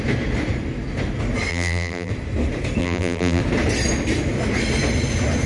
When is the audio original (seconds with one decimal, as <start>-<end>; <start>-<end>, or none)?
0.0-1.5; 2.1-2.8; 3.4-5.5